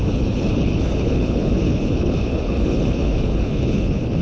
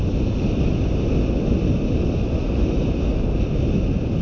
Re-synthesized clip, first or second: first